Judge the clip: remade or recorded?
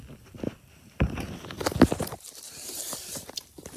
remade